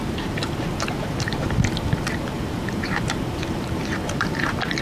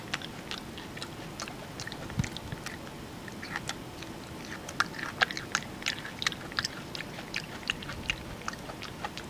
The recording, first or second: second